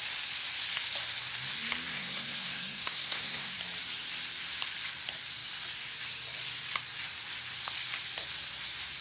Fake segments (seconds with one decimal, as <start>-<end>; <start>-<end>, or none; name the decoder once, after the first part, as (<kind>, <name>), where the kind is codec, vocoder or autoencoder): 1.9-3.6 (codec, SNAC)